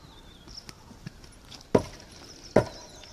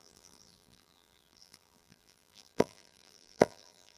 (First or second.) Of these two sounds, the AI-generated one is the second